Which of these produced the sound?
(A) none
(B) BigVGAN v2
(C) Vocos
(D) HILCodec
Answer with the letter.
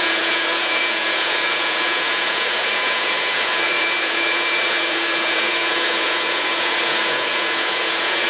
C